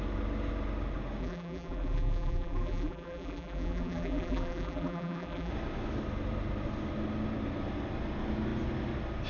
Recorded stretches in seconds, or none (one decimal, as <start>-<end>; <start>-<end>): 0.0-1.2; 5.5-9.3